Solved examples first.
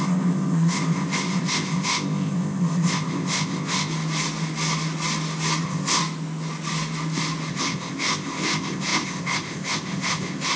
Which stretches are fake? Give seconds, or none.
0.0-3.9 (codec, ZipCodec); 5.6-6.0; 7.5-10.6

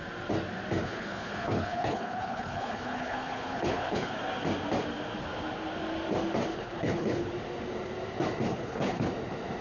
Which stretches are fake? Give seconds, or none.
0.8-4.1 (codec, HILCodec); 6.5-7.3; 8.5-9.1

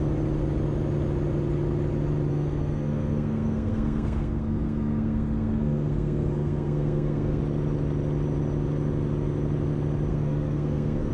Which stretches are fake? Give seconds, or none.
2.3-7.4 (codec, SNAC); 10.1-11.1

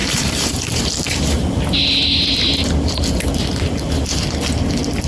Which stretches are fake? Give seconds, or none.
none

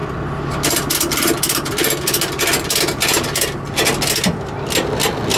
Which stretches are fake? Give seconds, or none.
none

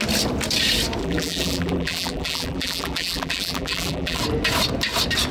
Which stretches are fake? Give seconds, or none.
1.0-4.2 (vocoder, BigVGAN v2)